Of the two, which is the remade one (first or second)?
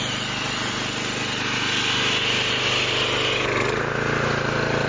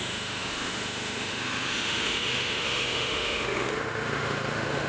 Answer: second